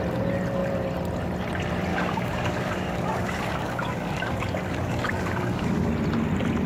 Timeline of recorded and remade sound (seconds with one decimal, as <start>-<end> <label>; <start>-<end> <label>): 0.0-1.9 recorded; 1.9-5.9 remade; 5.9-6.7 recorded